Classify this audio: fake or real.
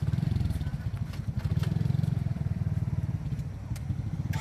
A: fake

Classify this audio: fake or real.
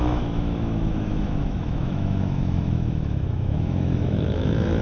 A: fake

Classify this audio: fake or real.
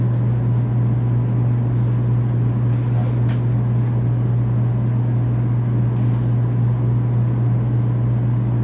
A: real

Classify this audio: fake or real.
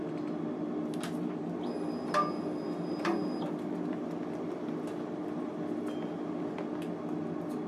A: real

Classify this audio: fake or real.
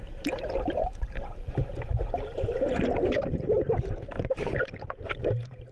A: fake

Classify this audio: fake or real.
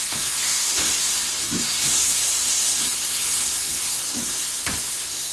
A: fake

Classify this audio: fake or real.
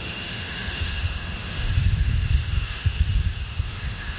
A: fake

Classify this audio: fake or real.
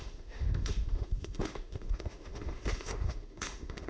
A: fake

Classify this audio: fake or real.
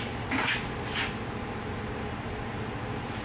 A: real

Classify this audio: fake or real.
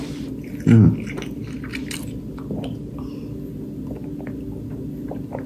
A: real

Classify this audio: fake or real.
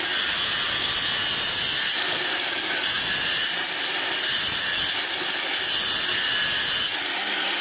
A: real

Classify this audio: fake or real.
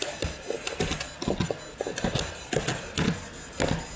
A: real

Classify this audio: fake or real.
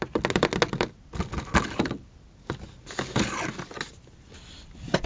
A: real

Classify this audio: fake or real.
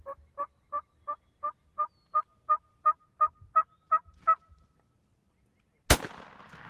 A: real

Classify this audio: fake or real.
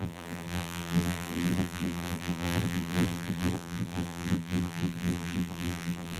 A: fake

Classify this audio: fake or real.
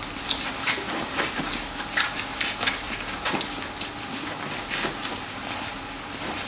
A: real